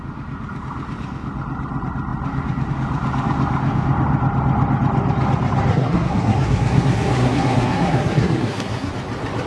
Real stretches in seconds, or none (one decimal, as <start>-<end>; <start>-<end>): 0.0-5.7; 8.9-9.5